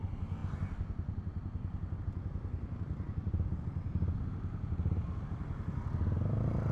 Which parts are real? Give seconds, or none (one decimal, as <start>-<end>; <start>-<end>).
0.0-6.7